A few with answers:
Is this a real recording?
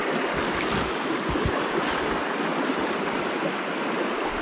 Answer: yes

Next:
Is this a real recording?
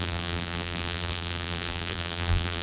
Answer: no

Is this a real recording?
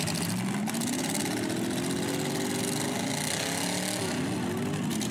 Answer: yes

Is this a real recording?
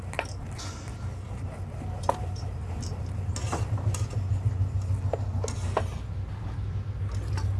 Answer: yes